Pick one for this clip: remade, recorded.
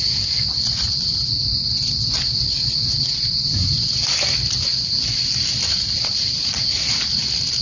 recorded